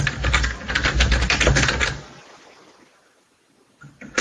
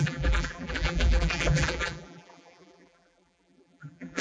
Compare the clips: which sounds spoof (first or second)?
second